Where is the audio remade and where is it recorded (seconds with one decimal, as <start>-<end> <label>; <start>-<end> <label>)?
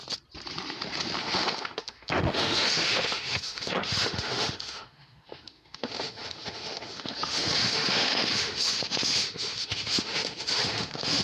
0.0-1.2 recorded; 1.2-11.2 remade